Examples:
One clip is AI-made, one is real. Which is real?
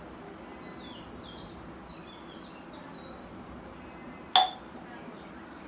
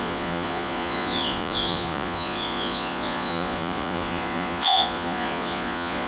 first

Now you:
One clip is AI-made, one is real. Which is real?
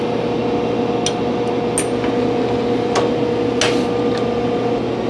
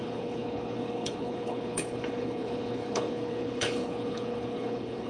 first